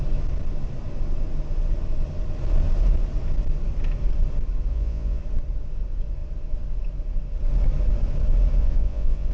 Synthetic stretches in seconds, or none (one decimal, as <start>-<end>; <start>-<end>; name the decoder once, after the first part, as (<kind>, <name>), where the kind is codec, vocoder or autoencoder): 4.7-5.2 (vocoder, Vocos); 8.6-9.3